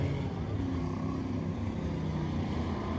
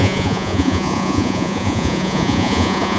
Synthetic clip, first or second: second